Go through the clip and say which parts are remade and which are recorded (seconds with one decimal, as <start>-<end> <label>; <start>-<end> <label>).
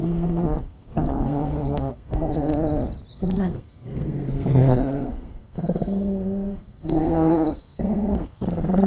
0.0-2.5 remade; 2.5-3.1 recorded; 3.1-8.9 remade